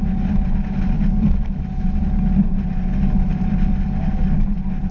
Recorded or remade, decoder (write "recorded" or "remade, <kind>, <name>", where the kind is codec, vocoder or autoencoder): recorded